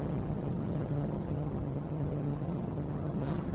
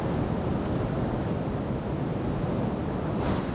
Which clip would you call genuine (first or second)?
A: second